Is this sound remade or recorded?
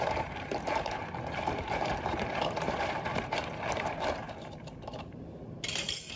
remade